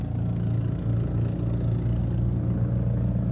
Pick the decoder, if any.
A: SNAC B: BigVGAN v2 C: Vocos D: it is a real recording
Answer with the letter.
D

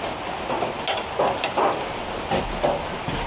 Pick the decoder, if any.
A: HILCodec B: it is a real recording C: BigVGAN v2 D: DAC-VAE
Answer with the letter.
B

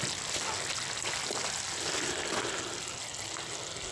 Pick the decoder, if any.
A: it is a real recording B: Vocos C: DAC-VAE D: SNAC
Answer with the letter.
A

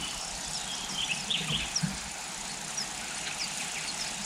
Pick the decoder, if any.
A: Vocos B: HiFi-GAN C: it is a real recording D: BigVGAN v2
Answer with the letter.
C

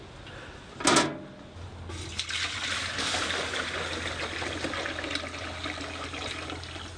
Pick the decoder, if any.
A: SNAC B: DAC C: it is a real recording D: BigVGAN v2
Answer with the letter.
C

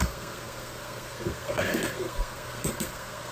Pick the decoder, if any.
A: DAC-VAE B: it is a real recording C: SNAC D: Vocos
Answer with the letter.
C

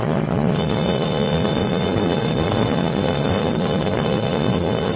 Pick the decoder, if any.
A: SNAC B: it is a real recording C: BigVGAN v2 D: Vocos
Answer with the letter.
D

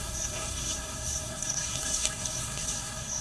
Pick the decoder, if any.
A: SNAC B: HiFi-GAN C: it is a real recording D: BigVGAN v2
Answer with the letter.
A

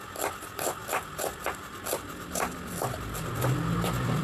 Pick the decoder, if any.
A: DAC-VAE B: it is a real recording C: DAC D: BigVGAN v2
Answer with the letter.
B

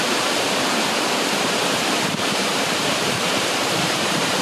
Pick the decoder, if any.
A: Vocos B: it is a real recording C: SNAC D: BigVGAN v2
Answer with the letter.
D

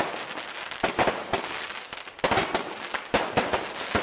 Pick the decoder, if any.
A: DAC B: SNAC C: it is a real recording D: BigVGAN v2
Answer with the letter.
C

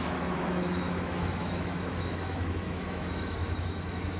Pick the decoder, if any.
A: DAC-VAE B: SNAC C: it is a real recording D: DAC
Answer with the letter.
A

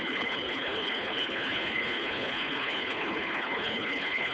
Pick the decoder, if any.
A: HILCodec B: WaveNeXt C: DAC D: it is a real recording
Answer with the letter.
A